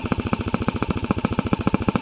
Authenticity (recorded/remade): remade